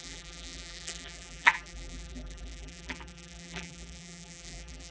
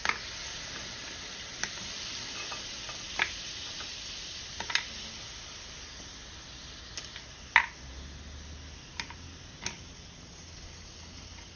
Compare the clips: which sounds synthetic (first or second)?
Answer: first